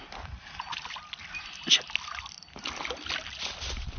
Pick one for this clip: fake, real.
real